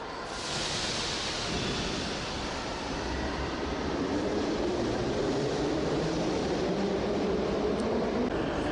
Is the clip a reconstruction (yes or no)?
yes